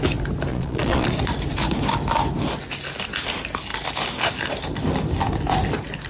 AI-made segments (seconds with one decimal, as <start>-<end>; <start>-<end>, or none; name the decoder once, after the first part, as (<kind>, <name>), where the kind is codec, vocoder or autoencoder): 0.5-1.1 (vocoder, Vocos)